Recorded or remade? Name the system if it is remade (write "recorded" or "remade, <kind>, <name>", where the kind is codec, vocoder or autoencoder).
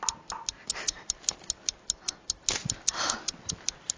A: recorded